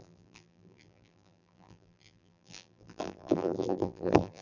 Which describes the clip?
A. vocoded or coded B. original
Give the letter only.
A